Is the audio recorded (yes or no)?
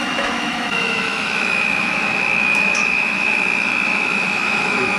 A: no